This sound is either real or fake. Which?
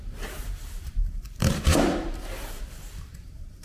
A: fake